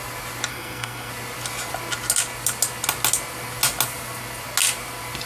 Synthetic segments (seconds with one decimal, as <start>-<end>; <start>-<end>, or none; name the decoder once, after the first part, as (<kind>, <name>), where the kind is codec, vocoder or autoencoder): 0.5-1.1 (codec, SNAC)